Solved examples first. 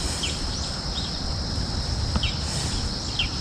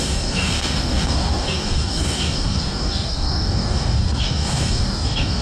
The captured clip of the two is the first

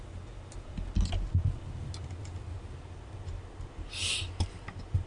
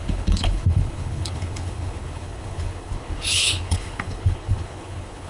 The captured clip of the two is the first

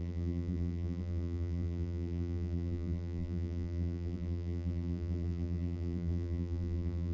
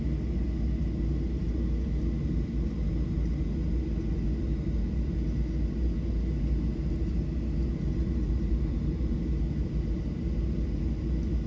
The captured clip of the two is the second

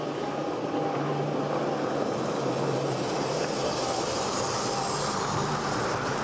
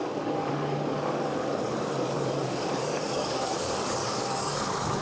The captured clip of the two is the first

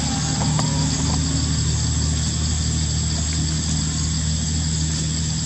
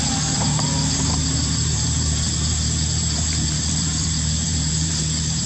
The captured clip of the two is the first